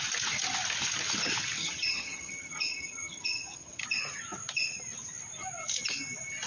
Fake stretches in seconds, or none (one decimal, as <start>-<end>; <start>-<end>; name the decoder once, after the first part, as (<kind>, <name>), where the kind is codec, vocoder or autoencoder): 1.6-3.8 (vocoder, HiFi-GAN)